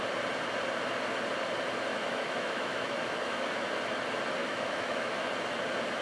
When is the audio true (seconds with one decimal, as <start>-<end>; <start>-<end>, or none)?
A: 0.0-1.9; 3.8-4.4; 5.3-6.0